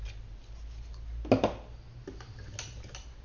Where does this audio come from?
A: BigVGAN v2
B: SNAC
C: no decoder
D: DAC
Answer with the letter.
C